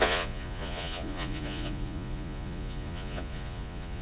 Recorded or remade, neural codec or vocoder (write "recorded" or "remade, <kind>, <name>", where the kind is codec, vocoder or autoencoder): remade, vocoder, Vocos